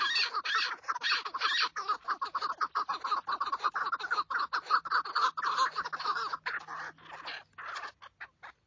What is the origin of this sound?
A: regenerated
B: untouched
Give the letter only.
B